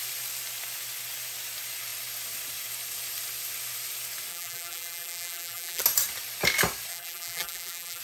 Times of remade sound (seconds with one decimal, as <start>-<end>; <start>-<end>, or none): 4.3-5.8; 6.9-8.0